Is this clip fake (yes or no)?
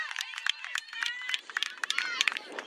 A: yes